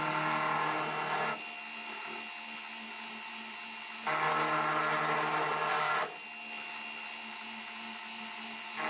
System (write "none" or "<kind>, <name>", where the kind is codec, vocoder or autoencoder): none